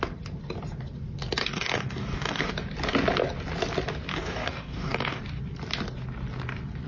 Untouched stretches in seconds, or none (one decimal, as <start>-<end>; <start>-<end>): 0.0-1.4; 2.5-4.1; 5.2-6.9